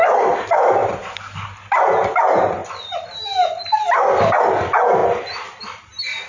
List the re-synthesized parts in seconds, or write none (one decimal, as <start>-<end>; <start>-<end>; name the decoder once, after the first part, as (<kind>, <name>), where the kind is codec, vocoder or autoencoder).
0.8-1.9 (vocoder, BigVGAN v2); 5.0-5.6